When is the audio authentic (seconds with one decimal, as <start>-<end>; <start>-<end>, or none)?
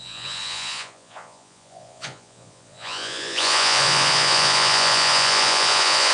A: none